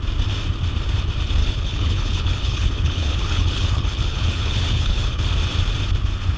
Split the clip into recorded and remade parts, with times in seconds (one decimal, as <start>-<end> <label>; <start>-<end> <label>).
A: 0.0-1.4 recorded; 1.4-5.2 remade; 5.2-6.4 recorded